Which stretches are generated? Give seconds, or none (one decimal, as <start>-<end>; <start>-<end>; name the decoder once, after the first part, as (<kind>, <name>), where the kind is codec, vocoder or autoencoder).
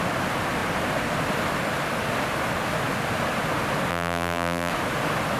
3.9-4.7 (vocoder, BigVGAN v2)